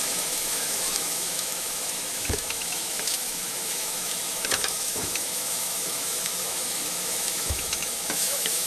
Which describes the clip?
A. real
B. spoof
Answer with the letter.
B